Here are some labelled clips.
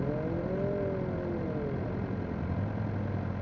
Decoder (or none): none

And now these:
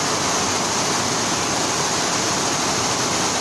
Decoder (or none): none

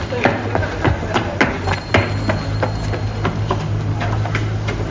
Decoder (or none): none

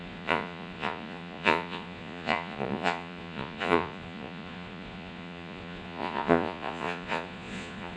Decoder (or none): vocoder, Vocos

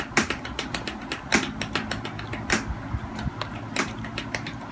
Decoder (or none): none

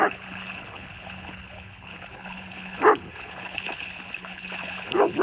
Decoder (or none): codec, HILCodec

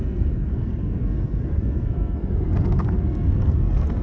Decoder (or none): codec, SNAC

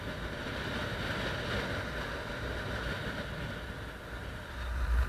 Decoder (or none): none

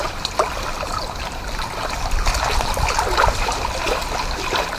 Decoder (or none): none